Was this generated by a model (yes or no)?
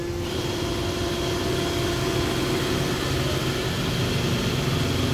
no